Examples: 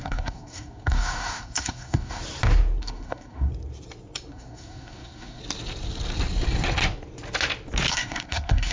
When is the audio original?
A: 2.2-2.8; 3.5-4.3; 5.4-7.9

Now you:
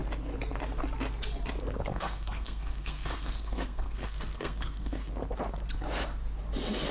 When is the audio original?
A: 0.0-1.9; 5.1-6.9